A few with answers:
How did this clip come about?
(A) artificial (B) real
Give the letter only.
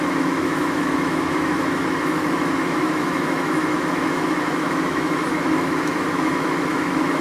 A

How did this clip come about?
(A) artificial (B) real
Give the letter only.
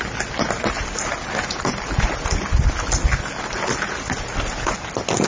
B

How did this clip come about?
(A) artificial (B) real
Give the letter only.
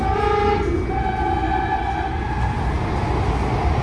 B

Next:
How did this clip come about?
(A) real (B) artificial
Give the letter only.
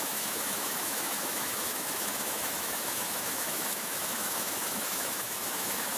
B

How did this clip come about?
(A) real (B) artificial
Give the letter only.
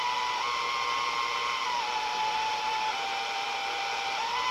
A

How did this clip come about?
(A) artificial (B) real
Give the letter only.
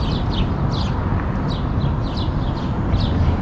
B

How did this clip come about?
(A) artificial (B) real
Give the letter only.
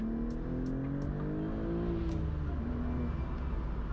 B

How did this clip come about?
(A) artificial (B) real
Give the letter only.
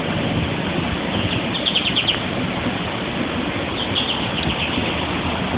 B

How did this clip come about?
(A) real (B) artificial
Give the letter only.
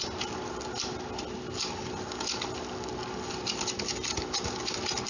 A